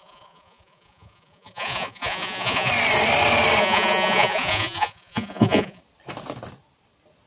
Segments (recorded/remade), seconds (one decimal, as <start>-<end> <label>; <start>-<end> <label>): 0.0-2.7 remade; 2.7-3.6 recorded; 3.6-5.8 remade; 5.8-7.3 recorded